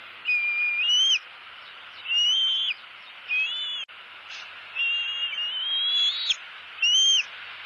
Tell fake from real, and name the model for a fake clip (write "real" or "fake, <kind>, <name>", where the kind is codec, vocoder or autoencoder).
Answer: real